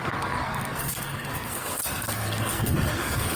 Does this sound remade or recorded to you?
remade